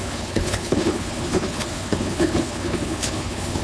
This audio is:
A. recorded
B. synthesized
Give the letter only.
B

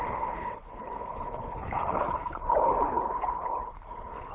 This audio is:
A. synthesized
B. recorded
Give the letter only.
A